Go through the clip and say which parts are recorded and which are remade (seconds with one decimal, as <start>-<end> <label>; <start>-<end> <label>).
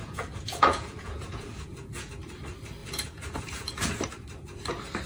0.0-2.1 remade; 2.1-2.8 recorded; 2.8-3.9 remade; 3.9-5.1 recorded